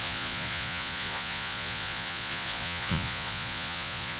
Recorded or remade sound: remade